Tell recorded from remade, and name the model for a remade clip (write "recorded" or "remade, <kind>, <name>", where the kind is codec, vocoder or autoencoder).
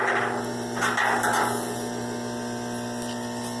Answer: recorded